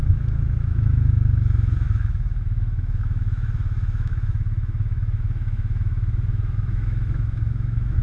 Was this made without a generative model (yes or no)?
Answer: no